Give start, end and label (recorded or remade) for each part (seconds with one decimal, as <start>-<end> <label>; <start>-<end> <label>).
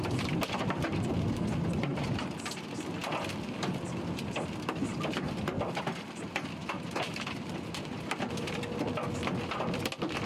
0.0-1.9 recorded; 1.9-2.5 remade; 2.5-4.9 recorded; 4.9-5.5 remade; 5.5-6.6 recorded; 6.6-8.6 remade; 8.6-10.3 recorded